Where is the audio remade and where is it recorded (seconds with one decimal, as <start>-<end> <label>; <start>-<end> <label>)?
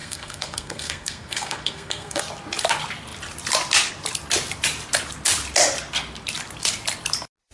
0.0-2.2 remade; 2.2-7.5 recorded